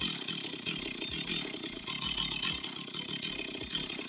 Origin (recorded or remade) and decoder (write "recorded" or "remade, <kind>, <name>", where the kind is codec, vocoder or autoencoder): recorded